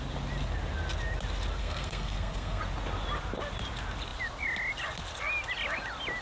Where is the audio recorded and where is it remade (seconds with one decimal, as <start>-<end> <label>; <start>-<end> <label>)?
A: 0.0-1.6 recorded; 1.6-2.6 remade; 2.6-6.2 recorded